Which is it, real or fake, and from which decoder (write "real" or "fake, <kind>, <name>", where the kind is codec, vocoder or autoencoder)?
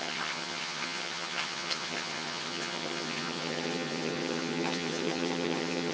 fake, vocoder, HiFi-GAN